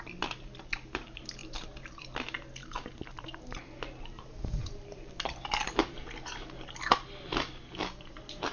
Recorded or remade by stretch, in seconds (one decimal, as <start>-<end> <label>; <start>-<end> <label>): 0.0-8.5 recorded